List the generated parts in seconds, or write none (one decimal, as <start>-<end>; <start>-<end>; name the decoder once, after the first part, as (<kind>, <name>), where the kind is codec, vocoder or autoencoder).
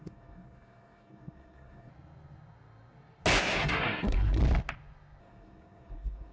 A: 0.0-1.9 (codec, SNAC); 3.4-4.4; 5.2-6.3